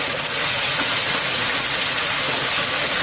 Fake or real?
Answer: fake